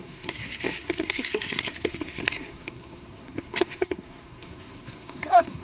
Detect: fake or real fake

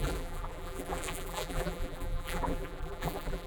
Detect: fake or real fake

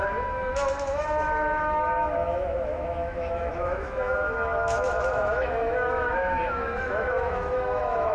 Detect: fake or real fake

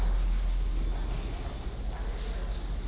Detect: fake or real real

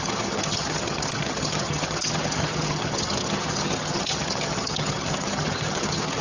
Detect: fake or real fake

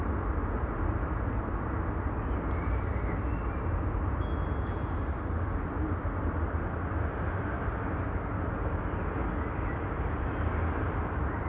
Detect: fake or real real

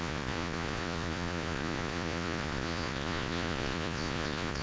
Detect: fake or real fake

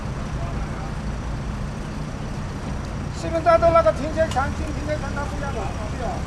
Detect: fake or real real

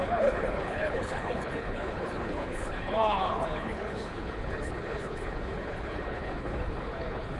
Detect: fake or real fake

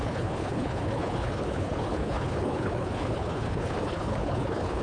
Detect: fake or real fake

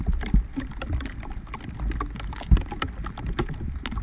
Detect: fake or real real